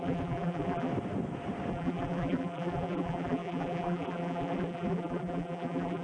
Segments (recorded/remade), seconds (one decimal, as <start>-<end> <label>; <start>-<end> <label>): 0.0-0.9 remade; 0.9-1.7 recorded; 1.7-6.0 remade